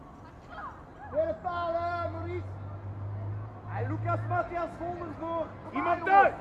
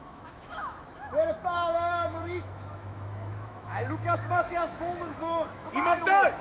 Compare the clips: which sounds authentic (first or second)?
first